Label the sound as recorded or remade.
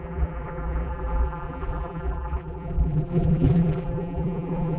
remade